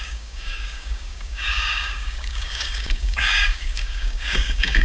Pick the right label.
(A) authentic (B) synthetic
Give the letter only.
B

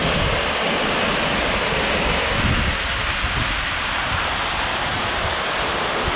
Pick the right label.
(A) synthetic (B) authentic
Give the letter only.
B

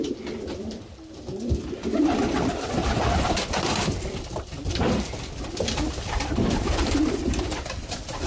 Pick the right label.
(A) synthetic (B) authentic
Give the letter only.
A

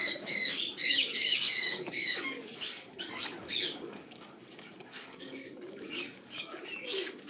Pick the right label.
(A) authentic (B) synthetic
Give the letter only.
B